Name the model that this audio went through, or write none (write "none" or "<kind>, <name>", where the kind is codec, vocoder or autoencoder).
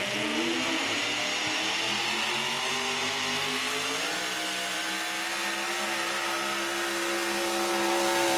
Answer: none